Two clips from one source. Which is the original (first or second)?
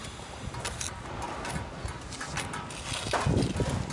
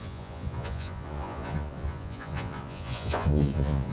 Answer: first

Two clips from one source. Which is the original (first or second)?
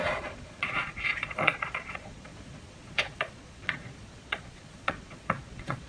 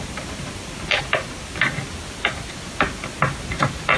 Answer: second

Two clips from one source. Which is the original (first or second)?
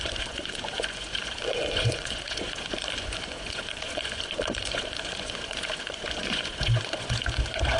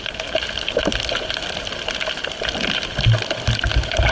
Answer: second